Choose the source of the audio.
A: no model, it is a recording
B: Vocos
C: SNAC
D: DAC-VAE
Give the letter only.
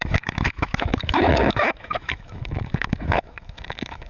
D